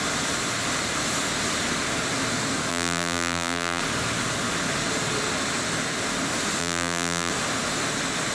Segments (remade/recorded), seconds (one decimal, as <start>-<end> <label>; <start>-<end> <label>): 0.0-2.7 recorded; 2.7-3.8 remade; 3.8-6.6 recorded; 6.6-7.3 remade; 7.3-8.3 recorded